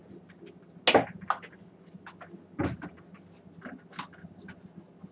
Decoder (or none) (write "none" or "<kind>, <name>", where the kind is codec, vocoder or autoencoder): none